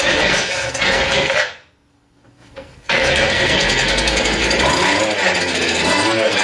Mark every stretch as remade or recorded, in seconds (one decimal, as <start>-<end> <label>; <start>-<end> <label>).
0.0-4.4 remade; 4.4-5.4 recorded; 5.4-6.4 remade